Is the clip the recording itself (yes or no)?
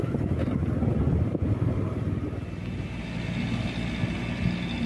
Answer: yes